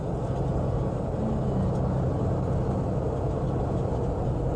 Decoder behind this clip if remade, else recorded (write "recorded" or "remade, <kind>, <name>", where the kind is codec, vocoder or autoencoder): recorded